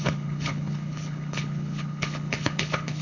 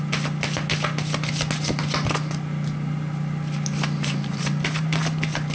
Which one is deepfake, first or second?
first